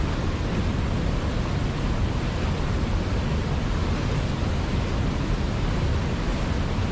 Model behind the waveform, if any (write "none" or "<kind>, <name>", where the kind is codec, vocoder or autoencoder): none